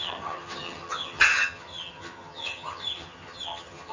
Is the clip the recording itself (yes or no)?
no